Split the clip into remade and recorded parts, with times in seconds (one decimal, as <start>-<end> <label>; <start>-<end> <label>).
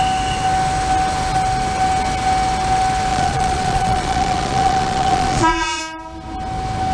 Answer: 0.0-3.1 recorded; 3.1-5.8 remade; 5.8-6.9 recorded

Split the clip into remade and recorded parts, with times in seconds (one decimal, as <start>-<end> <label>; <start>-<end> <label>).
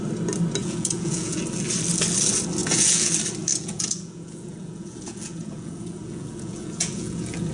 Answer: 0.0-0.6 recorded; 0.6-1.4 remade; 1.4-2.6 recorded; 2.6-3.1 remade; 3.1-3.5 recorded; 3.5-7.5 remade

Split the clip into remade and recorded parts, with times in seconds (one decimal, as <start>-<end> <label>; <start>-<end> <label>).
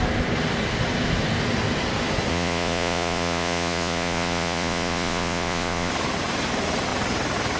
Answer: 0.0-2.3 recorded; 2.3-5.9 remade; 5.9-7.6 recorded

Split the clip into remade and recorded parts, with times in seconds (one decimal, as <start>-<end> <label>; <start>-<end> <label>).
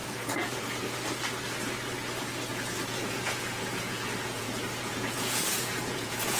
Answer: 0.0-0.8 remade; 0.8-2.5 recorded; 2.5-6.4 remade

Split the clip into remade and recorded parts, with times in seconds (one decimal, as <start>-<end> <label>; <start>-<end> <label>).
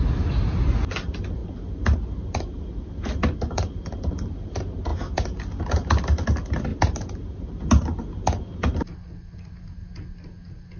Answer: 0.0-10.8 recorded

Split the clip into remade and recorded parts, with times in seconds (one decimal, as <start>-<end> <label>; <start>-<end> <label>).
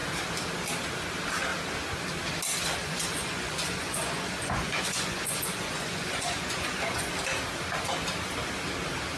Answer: 0.0-2.8 recorded; 2.8-7.1 remade; 7.1-9.2 recorded